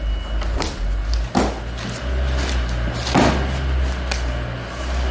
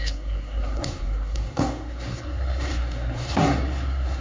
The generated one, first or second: second